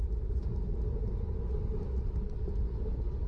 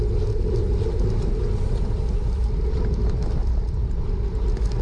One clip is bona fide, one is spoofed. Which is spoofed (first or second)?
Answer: first